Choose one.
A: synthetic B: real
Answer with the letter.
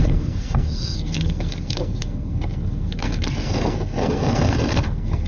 A